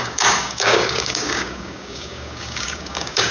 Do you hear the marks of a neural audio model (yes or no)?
yes